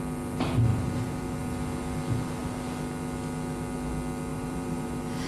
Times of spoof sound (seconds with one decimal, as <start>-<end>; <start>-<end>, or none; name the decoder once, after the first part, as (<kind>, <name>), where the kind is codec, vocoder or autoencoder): 0.7-1.4 (vocoder, BigVGAN v2); 4.3-5.3

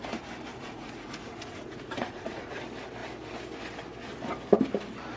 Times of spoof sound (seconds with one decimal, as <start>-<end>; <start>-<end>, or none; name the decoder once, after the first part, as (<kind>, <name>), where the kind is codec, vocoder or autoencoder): 0.5-2.6 (vocoder, Vocos)